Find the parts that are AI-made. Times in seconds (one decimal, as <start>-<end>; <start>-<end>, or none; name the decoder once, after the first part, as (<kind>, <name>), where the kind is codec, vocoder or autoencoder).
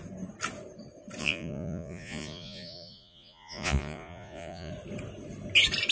1.2-4.7 (vocoder, Vocos)